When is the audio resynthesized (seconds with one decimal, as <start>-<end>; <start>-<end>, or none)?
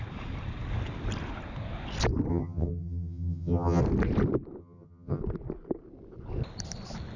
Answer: 2.3-3.8; 4.6-5.2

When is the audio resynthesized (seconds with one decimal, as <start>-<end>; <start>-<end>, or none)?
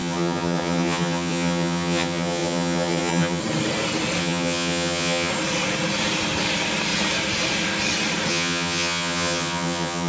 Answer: 0.0-3.4; 4.2-5.3; 8.3-10.1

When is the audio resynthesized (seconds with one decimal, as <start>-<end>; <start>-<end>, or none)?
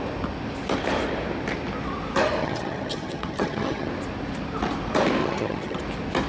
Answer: 2.4-3.9; 5.2-5.8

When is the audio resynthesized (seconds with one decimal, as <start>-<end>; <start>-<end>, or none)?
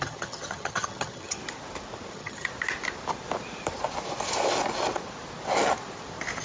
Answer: 0.0-1.4; 2.1-2.5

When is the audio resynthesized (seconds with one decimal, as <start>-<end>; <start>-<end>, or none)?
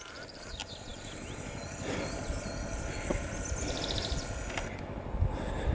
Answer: none